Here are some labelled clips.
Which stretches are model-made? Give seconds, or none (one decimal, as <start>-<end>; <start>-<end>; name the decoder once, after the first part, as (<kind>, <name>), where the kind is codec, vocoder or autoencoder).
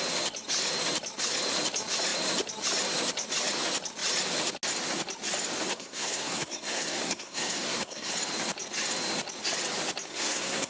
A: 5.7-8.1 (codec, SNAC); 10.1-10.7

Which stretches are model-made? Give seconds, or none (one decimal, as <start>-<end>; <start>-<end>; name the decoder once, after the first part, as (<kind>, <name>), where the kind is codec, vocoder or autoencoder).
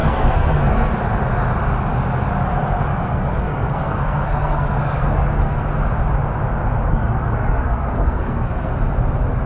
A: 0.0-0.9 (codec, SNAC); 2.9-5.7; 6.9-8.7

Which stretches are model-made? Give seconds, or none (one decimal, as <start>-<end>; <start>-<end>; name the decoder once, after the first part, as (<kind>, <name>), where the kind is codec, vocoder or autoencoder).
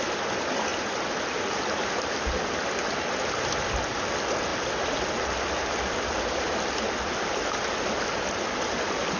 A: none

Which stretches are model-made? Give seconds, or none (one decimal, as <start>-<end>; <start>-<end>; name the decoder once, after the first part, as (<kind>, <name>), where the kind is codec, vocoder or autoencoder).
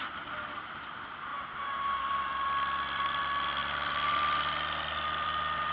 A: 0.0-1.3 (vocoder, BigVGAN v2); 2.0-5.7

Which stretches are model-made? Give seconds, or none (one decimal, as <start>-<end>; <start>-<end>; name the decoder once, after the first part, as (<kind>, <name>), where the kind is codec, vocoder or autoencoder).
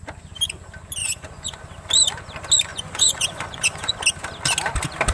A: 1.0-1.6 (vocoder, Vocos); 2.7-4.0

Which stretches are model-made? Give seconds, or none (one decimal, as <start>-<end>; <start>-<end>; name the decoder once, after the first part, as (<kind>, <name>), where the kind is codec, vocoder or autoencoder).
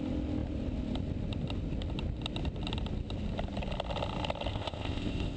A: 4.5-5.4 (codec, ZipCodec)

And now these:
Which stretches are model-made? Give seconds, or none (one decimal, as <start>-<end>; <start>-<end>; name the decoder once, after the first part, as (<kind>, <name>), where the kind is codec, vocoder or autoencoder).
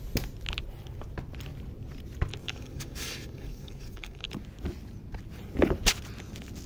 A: 2.4-4.3 (codec, DAC)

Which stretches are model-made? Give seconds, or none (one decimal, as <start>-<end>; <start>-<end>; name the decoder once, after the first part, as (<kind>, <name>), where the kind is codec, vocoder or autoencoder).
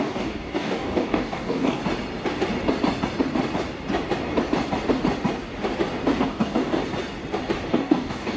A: 0.0-1.8 (codec, DAC); 6.2-6.8; 7.7-8.4